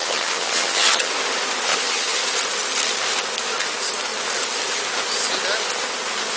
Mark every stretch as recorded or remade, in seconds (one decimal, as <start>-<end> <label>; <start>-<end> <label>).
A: 0.0-1.1 remade; 1.1-1.7 recorded; 1.7-2.2 remade; 2.2-6.4 recorded